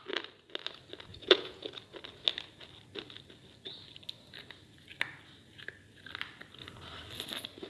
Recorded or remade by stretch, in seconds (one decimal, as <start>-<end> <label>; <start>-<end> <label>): 0.0-1.1 recorded; 1.1-1.7 remade; 1.7-7.7 recorded